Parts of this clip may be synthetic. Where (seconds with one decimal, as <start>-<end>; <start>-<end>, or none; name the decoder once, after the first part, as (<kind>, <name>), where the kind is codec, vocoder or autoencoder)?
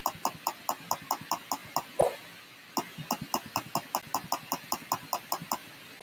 none